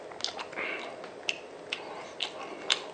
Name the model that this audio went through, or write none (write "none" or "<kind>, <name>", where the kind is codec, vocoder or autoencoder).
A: none